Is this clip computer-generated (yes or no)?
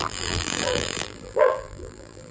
yes